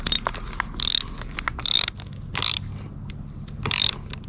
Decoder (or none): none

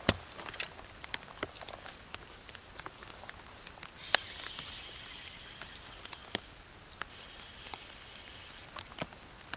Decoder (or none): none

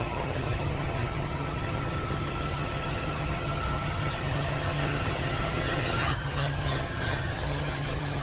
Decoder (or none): vocoder, HiFi-GAN